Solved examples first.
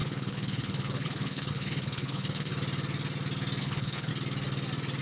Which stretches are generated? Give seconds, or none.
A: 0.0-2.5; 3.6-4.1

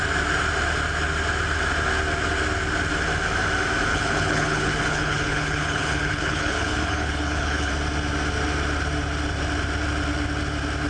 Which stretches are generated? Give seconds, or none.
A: 3.9-7.7

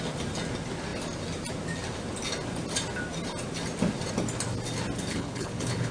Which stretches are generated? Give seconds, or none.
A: 5.1-5.9